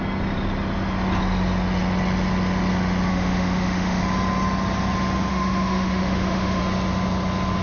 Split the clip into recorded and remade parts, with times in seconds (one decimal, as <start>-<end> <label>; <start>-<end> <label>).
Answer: 0.0-3.1 recorded; 3.1-4.0 remade; 4.0-5.3 recorded; 5.3-6.6 remade; 6.6-7.6 recorded